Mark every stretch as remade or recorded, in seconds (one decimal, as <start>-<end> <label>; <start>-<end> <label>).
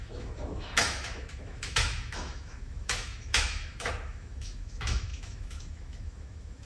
0.0-6.7 remade